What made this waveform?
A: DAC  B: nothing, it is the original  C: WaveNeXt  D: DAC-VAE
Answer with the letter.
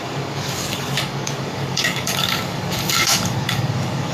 A